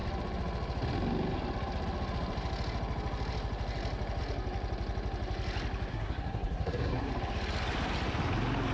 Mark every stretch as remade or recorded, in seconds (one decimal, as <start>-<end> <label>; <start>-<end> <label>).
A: 0.0-5.9 recorded; 5.9-7.1 remade; 7.1-8.7 recorded